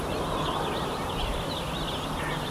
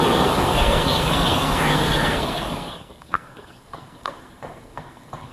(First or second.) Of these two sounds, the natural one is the first